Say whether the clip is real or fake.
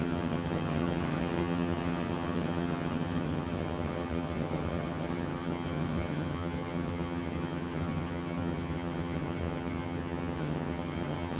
fake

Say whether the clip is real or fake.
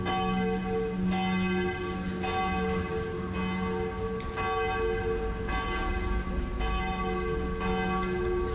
real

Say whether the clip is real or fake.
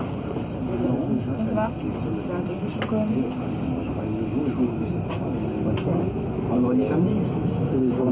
real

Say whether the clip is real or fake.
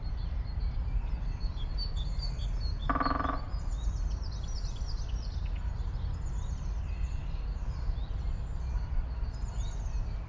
real